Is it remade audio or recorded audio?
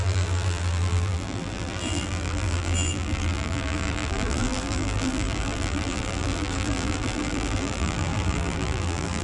remade